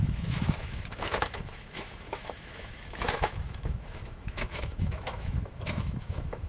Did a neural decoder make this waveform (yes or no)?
yes